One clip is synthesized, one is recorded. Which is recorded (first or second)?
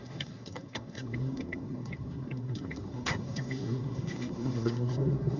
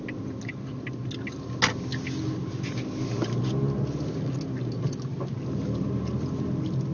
second